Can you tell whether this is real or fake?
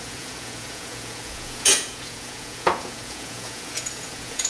fake